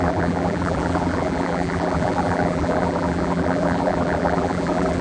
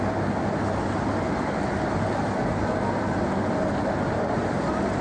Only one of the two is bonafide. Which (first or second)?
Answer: second